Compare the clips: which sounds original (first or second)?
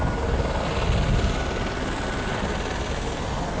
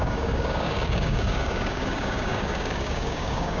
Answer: first